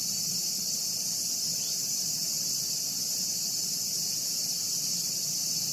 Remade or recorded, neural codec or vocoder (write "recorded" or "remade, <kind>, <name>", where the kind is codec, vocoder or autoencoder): recorded